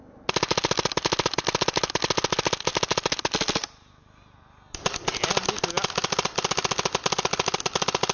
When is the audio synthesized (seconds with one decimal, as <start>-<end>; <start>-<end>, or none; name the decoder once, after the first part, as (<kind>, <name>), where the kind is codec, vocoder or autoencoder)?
none